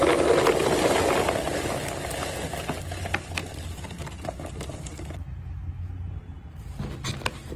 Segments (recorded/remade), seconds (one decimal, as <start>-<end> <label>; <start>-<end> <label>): 0.0-5.2 recorded; 5.2-5.8 remade; 5.8-7.6 recorded